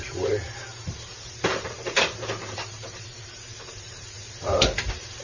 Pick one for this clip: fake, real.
fake